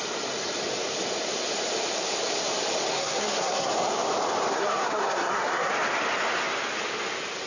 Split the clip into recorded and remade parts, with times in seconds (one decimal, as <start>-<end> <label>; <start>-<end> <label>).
0.0-2.9 recorded; 2.9-3.7 remade; 3.7-4.5 recorded; 4.5-5.7 remade; 5.7-7.5 recorded